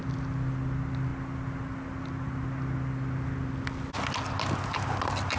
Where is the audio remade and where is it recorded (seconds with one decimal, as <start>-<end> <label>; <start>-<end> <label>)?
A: 0.0-5.4 recorded